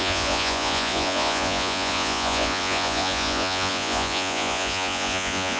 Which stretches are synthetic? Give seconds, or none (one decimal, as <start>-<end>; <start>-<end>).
0.0-5.6